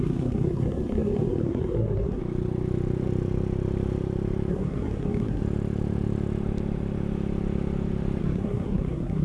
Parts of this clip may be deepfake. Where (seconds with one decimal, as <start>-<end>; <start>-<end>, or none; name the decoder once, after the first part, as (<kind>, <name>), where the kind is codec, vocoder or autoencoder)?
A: 0.0-2.2 (codec, SNAC); 4.5-5.4; 8.2-9.2